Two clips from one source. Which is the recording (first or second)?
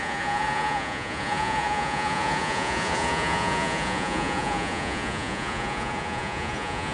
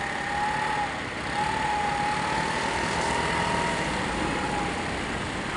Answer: second